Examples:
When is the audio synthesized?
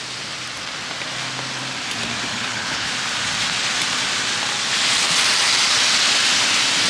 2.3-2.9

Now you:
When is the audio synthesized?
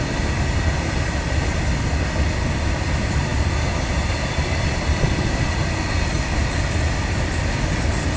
none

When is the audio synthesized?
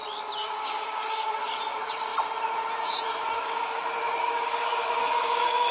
0.4-1.5; 3.2-3.8; 4.2-5.7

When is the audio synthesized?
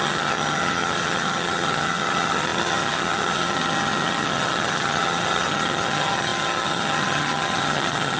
0.0-8.2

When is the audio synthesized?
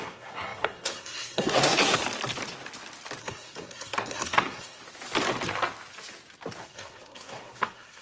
0.0-2.0; 3.2-4.8; 6.6-8.0